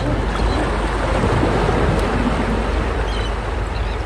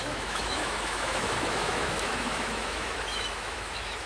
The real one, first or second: first